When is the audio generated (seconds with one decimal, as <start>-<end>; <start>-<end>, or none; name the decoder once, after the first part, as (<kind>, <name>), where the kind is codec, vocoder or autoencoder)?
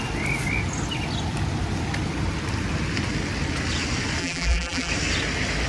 4.2-4.9 (vocoder, BigVGAN v2)